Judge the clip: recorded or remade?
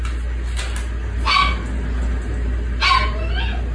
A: recorded